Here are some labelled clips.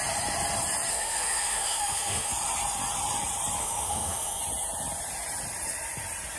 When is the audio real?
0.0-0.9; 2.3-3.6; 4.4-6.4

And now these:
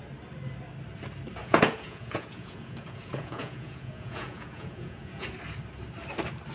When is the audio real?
0.0-1.4; 5.3-6.5

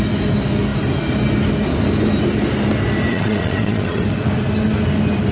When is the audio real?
0.0-3.1; 4.0-5.3